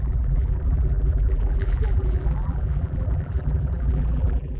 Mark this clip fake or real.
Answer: fake